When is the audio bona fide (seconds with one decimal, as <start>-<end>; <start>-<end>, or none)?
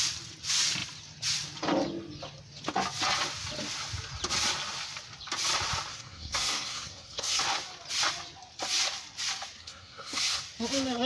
0.0-5.9; 7.4-9.6; 10.4-11.1